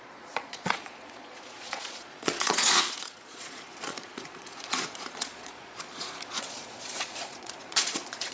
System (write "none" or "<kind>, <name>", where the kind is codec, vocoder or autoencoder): vocoder, Vocos